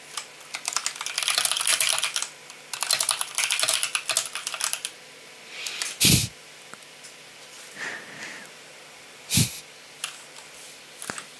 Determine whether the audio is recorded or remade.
recorded